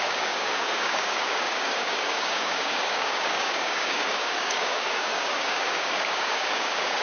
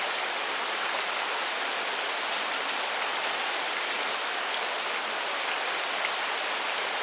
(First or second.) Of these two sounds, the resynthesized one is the first